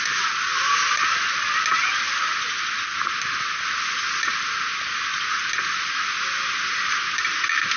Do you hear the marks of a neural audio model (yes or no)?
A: no